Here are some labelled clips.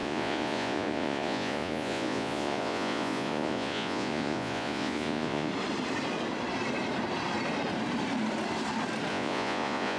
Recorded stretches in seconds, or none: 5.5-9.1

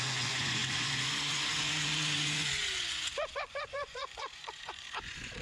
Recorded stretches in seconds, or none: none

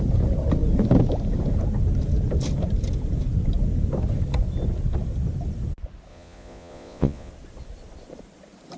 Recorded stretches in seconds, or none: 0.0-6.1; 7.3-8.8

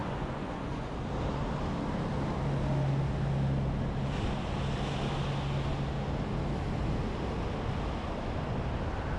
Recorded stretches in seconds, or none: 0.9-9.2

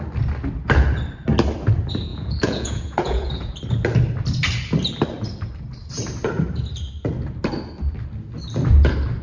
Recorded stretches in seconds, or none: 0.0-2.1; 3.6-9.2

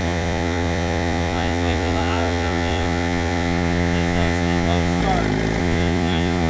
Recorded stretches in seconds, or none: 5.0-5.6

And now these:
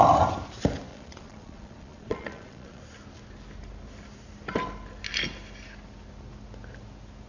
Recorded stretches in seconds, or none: 0.0-0.9; 2.8-7.3

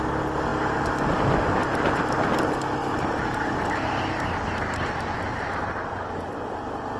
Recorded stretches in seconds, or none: 0.0-7.0